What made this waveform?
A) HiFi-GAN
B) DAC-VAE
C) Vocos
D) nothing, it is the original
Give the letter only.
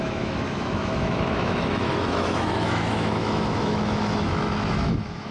B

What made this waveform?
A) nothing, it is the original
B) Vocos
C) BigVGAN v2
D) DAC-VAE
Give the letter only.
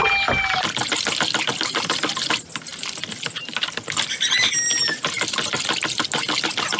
A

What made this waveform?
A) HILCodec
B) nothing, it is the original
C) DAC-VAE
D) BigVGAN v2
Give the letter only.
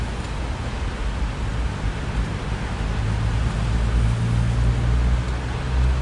B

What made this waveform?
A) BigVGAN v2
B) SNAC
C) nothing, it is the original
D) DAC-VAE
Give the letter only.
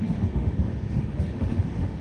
D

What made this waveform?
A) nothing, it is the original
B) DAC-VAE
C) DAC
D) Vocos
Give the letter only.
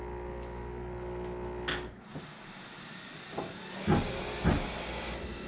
A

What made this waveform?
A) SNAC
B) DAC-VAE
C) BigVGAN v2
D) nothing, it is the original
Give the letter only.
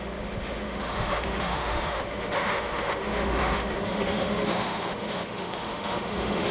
B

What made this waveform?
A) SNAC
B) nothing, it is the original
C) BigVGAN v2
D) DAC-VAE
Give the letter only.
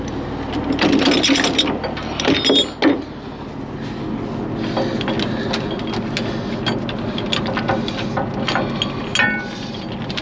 B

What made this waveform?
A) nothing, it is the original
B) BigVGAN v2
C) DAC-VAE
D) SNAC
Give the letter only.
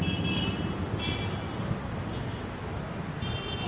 A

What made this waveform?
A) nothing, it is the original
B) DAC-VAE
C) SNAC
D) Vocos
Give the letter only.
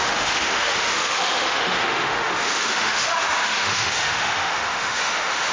B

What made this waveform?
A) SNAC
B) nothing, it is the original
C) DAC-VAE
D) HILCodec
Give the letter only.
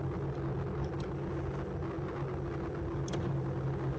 B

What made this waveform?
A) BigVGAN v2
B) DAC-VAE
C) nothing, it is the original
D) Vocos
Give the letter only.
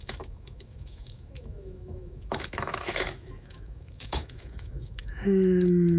B